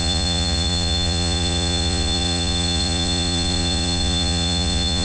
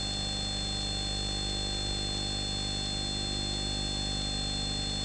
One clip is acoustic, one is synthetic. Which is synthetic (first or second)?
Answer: first